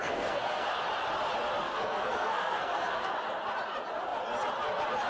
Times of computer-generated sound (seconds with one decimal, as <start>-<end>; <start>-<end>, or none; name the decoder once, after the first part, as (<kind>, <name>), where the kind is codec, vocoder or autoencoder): 0.0-0.8 (codec, SNAC); 1.6-3.1